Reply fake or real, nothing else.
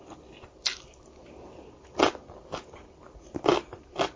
fake